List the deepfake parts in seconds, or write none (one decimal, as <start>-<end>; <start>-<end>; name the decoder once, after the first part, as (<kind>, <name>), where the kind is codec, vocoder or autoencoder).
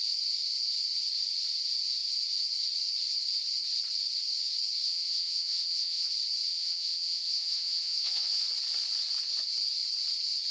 4.8-6.1 (vocoder, WaveNeXt); 6.5-8.5